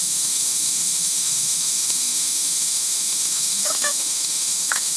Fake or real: fake